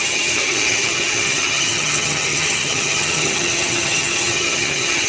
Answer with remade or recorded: remade